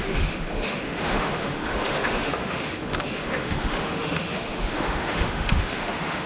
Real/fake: fake